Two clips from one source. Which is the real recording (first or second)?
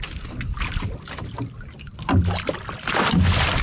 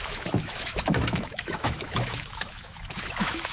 first